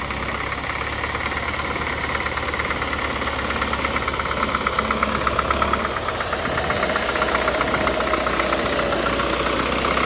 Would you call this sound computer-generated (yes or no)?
no